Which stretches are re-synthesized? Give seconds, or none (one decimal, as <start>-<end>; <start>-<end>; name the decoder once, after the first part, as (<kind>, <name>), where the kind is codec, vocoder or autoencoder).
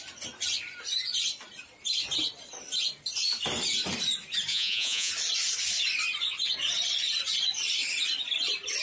4.5-5.1 (vocoder, Vocos)